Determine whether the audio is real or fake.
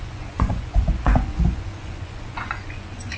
fake